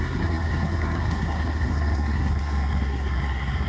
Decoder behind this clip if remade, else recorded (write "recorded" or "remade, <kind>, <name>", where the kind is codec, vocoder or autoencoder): remade, codec, SNAC